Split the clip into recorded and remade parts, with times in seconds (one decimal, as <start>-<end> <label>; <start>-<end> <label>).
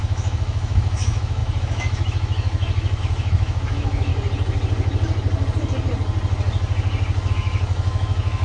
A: 0.0-4.1 remade; 4.1-7.3 recorded; 7.3-8.4 remade